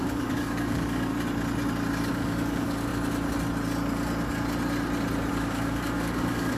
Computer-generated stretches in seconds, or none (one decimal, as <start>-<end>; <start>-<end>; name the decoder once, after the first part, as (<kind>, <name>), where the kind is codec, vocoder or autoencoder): 0.0-1.1 (codec, DAC); 2.1-2.9; 5.3-6.6